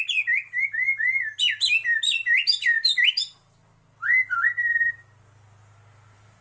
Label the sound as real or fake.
real